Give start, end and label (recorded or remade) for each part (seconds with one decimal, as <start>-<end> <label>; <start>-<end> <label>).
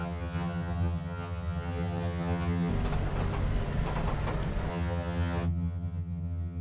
0.0-2.7 remade; 2.7-4.7 recorded; 4.7-6.6 remade